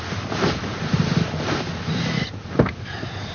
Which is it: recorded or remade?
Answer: recorded